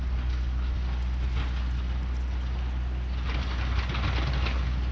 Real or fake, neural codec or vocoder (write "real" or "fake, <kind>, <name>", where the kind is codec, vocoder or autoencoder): real